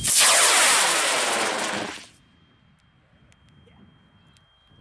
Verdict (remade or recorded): recorded